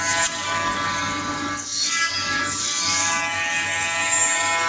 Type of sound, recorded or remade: remade